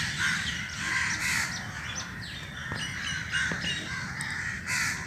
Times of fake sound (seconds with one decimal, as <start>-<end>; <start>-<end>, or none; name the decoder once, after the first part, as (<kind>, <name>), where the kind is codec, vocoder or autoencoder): 0.0-2.6 (vocoder, BigVGAN v2)